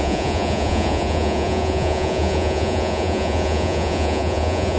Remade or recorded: remade